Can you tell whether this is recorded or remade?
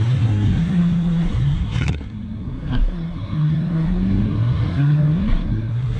remade